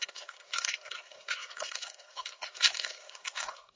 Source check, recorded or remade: remade